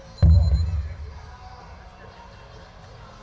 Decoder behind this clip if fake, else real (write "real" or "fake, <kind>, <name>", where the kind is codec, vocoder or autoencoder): real